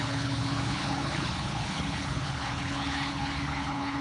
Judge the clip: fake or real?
fake